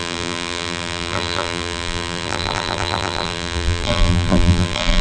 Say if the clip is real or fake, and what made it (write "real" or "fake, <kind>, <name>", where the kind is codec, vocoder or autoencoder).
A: fake, vocoder, BigVGAN v2